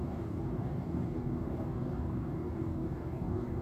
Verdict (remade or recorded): remade